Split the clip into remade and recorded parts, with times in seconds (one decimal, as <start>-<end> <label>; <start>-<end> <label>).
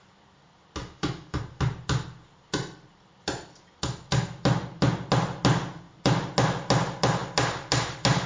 0.0-0.8 recorded; 0.8-1.4 remade; 1.4-8.3 recorded